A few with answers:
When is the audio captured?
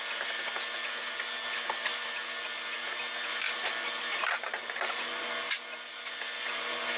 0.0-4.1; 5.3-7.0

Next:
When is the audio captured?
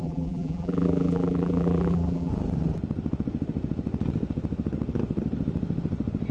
2.3-6.3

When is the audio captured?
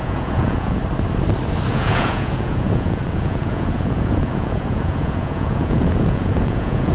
0.8-1.7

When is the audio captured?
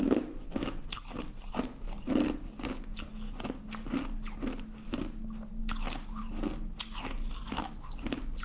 0.0-8.4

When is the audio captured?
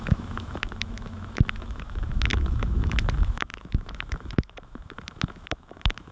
none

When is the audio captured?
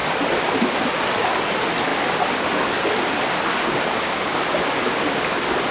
0.0-5.7